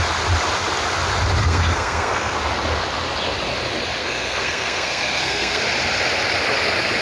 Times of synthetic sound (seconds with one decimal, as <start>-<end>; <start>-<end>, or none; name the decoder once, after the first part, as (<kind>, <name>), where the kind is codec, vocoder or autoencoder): 1.4-2.4 (codec, SNAC); 4.0-5.6